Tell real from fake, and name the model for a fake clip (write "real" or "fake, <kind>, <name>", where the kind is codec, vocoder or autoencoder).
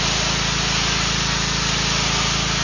real